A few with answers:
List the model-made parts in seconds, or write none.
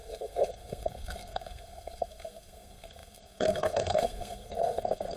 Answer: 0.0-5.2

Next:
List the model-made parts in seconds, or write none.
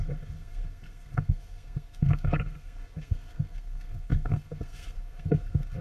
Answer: 0.0-5.8